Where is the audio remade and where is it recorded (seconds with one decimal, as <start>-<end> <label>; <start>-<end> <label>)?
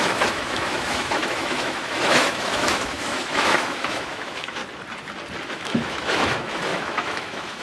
0.0-4.6 remade; 4.6-5.5 recorded; 5.5-7.6 remade